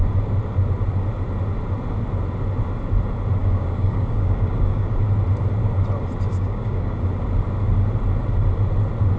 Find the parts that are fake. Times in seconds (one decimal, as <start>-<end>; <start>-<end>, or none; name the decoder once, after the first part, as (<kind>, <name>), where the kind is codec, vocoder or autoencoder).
3.4-5.0 (codec, DAC); 6.3-7.0